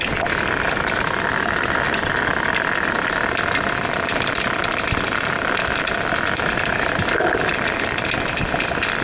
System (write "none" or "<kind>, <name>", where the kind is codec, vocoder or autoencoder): none